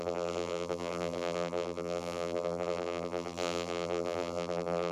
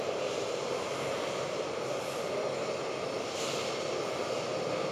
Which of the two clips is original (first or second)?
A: second